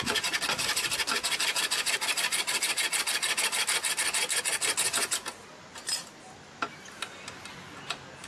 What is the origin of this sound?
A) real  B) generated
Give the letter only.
A